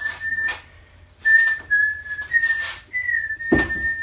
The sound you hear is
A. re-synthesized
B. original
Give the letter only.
B